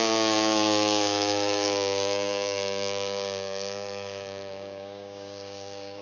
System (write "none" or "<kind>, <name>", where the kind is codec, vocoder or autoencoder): codec, DAC